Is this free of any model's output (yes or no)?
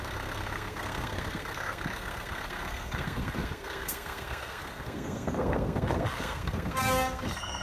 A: no